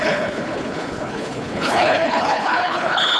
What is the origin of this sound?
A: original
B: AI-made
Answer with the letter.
B